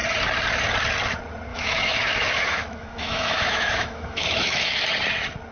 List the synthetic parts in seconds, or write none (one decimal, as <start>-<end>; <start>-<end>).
1.5-4.8